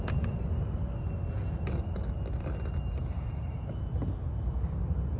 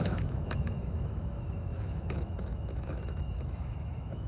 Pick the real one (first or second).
first